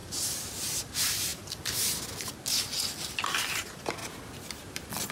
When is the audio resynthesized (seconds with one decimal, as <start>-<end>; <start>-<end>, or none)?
0.0-1.3; 3.6-4.0